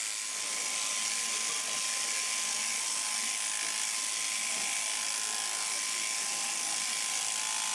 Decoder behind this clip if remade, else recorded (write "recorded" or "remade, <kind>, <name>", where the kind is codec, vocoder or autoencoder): recorded